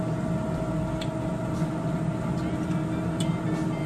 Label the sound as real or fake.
real